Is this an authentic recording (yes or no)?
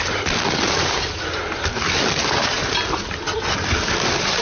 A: yes